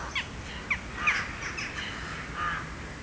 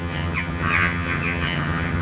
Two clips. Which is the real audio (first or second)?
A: first